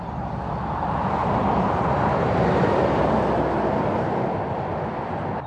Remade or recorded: recorded